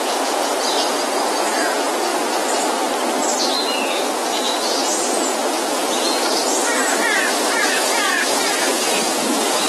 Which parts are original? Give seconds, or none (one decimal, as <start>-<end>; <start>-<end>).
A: 2.1-3.4; 6.8-7.7